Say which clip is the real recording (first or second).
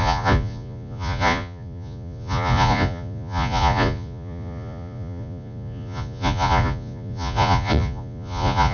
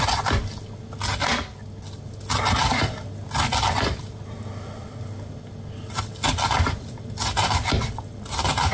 second